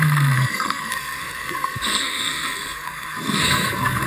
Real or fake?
fake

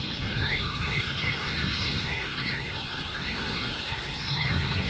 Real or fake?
fake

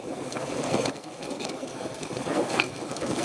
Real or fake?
fake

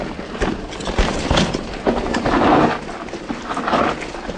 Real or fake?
real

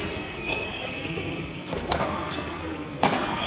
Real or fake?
fake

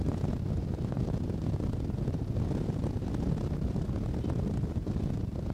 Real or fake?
real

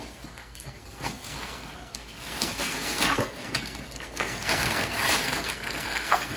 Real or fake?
fake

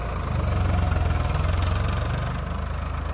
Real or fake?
real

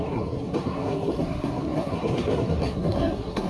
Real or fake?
fake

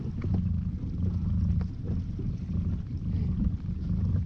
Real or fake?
real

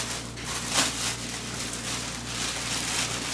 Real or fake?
real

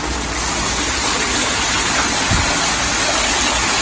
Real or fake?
real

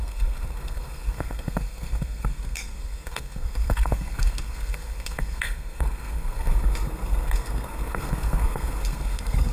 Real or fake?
fake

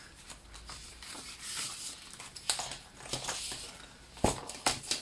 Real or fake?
real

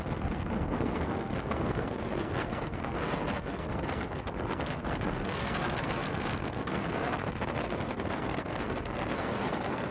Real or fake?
fake